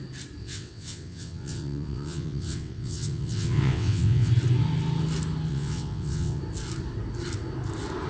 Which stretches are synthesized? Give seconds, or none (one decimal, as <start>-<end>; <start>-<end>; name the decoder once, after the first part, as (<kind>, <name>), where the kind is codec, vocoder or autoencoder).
0.4-4.3 (vocoder, WaveNeXt); 5.5-6.4